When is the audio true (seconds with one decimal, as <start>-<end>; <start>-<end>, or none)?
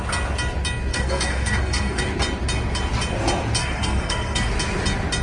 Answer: 0.0-0.9; 2.0-3.6; 4.5-5.2